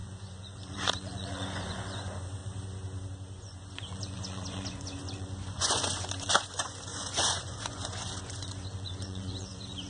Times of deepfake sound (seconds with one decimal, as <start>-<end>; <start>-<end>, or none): 0.0-2.4; 3.4-9.9